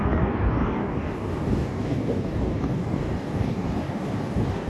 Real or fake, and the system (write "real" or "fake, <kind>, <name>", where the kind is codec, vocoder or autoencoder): fake, codec, DAC